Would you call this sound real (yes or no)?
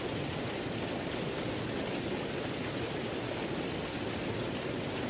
yes